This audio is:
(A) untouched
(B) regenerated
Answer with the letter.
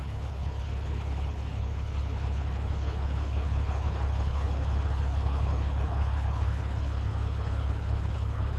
B